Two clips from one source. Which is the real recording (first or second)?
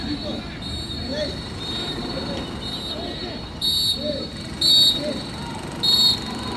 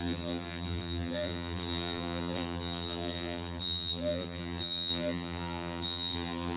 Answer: first